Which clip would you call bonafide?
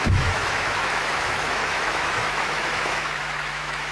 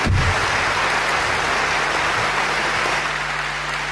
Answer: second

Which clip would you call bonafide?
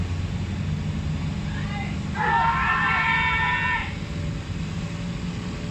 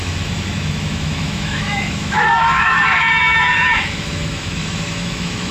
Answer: first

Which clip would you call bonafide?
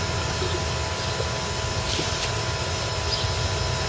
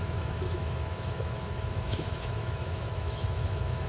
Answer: first